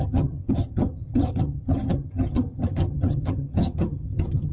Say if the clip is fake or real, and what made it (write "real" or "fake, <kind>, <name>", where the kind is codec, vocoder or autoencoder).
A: fake, vocoder, HiFi-GAN